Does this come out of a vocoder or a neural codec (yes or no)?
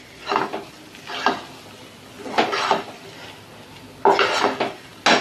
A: no